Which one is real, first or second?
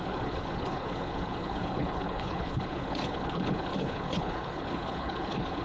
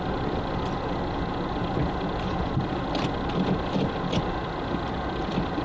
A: second